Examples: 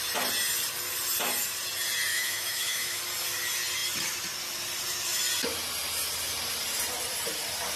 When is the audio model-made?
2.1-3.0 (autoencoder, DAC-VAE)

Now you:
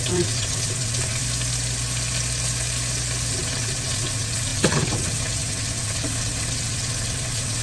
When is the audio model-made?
0.0-1.2 (vocoder, WaveNeXt); 3.3-7.6